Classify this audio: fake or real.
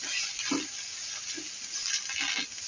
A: real